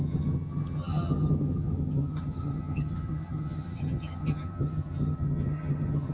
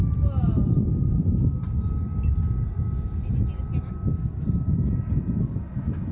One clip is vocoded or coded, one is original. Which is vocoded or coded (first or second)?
first